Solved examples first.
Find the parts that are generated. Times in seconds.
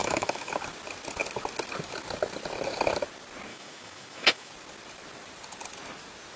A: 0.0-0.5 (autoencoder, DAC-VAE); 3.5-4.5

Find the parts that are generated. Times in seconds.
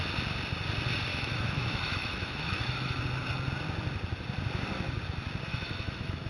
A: 1.1-3.0 (autoencoder, DAC-VAE); 5.5-6.3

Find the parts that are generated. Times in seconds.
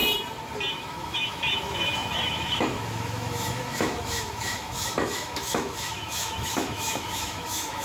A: 0.7-7.8 (autoencoder, DAC-VAE)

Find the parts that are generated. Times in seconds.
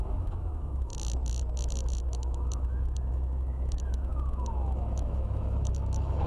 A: 0.0-0.9 (autoencoder, DAC-VAE); 2.0-6.3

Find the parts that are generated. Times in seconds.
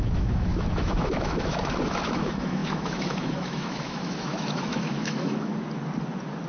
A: 0.0-5.5 (autoencoder, DAC-VAE)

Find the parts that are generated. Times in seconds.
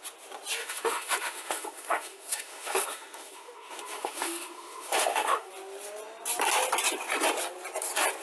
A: 0.6-5.5 (autoencoder, DAC-VAE)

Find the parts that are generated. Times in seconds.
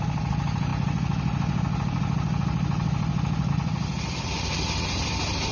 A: none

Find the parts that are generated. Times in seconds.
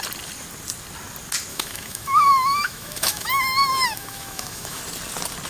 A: 1.5-4.8 (autoencoder, DAC-VAE)